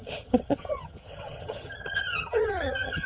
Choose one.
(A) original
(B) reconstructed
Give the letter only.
B